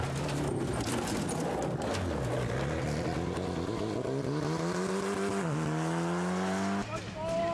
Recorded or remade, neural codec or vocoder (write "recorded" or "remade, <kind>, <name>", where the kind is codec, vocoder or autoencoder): recorded